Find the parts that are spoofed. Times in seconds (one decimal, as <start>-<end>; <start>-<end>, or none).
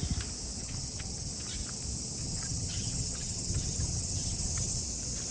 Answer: 0.6-1.3; 2.2-4.8